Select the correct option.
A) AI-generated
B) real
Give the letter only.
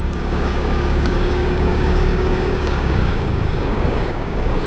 A